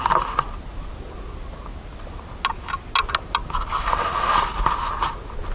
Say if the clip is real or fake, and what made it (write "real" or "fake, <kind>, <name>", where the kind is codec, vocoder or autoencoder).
real